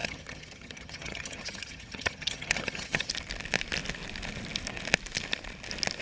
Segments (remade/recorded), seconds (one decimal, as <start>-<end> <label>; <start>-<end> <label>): 0.0-3.1 remade; 3.1-6.0 recorded